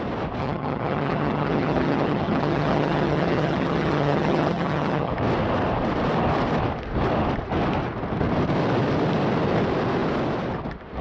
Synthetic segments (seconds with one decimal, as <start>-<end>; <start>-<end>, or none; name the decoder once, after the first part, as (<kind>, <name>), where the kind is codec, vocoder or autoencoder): 0.4-5.1 (vocoder, HiFi-GAN)